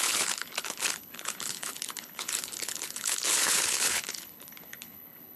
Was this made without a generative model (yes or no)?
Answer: no